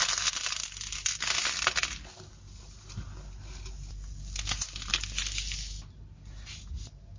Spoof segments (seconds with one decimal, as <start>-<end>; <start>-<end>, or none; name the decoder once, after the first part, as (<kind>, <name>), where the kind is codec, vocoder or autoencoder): none